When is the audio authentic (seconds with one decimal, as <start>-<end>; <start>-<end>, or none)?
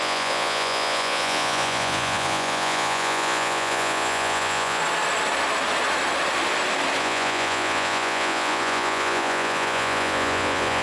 4.8-7.0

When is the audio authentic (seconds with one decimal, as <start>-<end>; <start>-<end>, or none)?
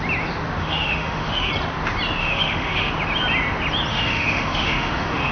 0.0-0.6; 1.5-2.2; 2.9-3.9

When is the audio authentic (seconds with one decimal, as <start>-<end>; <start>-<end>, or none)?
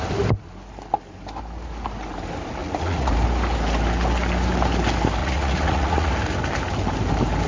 0.0-2.6; 3.1-5.2; 6.1-7.5